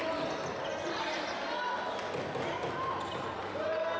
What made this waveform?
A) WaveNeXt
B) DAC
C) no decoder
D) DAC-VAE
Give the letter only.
C